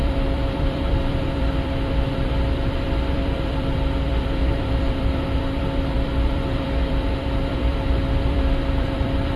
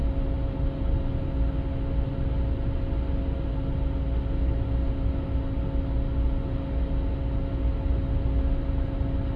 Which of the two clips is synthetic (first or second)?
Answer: first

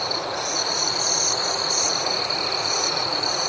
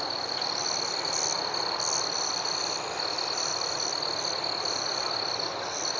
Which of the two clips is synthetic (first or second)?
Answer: first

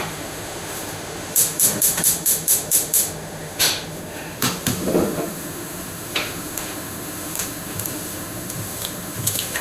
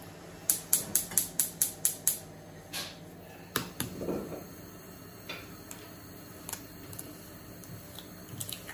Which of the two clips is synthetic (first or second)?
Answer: first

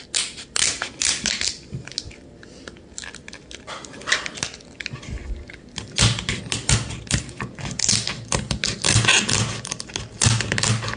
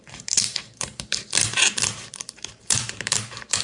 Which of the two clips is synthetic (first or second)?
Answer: second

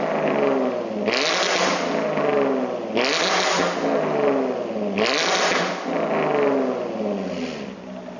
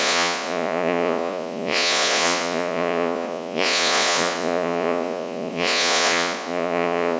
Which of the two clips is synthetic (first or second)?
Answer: second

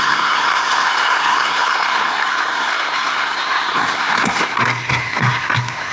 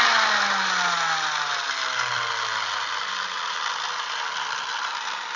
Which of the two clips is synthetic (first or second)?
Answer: first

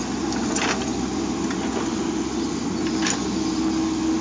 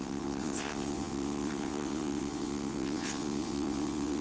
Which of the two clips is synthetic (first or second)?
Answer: second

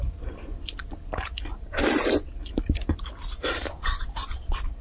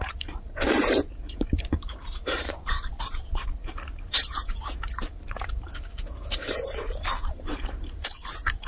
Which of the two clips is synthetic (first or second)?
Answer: second